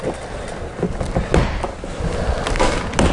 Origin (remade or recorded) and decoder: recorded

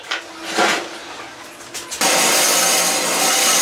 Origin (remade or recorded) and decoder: recorded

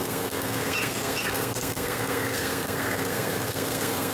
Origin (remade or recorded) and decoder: remade, codec, SNAC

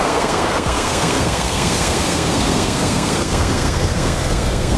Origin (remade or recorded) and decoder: remade, codec, SNAC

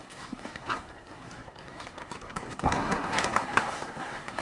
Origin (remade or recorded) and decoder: remade, codec, SNAC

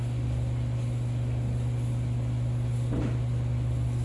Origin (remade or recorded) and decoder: recorded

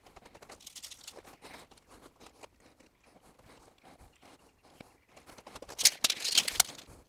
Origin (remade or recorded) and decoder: recorded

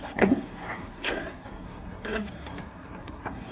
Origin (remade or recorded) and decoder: remade, codec, SNAC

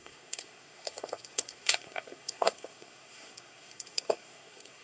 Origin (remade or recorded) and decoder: remade, codec, SNAC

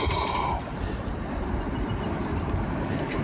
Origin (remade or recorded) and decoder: recorded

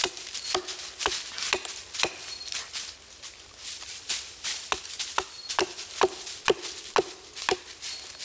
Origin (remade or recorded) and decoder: recorded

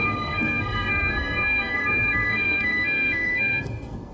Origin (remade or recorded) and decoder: remade, codec, SNAC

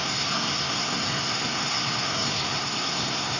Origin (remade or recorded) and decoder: remade, codec, SNAC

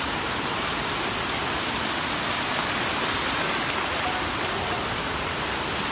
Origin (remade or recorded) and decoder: recorded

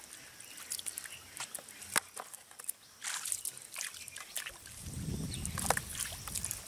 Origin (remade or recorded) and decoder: recorded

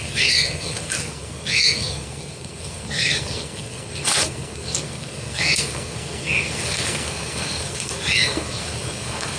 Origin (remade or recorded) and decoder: remade, codec, SNAC